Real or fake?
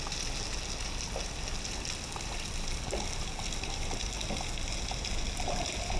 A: real